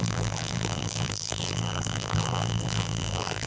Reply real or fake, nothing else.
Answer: fake